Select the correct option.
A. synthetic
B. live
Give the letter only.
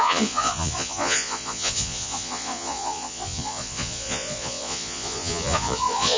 A